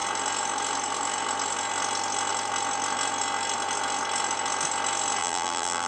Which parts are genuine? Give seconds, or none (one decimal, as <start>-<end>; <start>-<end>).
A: 0.0-5.2